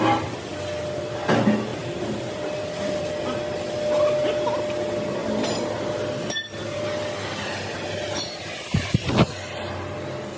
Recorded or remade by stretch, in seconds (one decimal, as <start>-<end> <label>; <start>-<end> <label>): 0.0-1.7 recorded; 1.7-3.1 remade; 3.1-5.2 recorded; 5.2-7.1 remade; 7.1-10.4 recorded